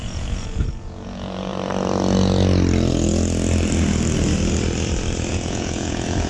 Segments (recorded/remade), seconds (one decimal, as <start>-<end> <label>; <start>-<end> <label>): 0.0-1.5 remade; 1.5-5.3 recorded; 5.3-6.3 remade